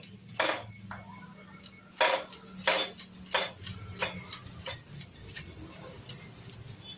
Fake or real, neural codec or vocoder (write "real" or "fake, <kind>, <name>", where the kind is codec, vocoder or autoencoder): real